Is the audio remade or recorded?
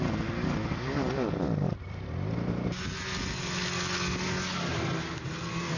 recorded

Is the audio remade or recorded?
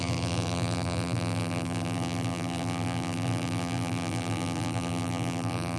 remade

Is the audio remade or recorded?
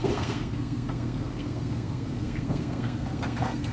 remade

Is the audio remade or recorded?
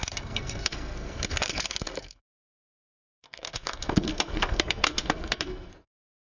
remade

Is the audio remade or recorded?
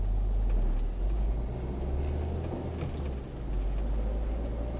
recorded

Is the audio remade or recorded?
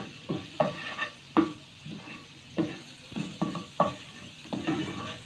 remade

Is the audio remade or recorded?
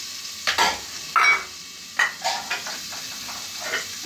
recorded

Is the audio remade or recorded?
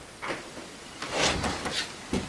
recorded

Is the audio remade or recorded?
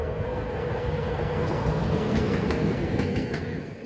remade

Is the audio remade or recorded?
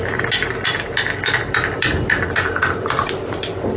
recorded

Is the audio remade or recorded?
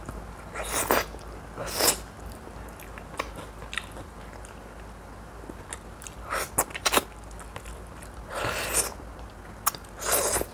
recorded